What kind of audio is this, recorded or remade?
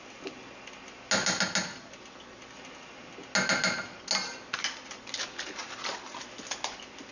recorded